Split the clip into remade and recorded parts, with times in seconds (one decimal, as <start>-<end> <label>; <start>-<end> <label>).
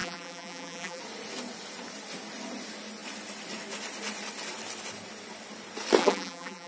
0.0-1.0 remade; 1.0-6.0 recorded; 6.0-6.7 remade